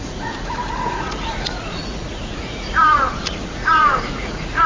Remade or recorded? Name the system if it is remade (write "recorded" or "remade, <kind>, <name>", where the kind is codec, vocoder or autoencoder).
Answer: remade, vocoder, Vocos